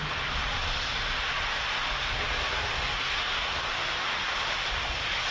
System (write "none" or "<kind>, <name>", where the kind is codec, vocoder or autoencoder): none